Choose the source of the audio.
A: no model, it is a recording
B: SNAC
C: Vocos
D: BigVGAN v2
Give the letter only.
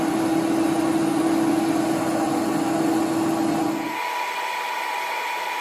A